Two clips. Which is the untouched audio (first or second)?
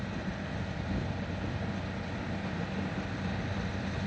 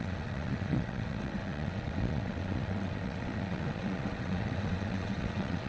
first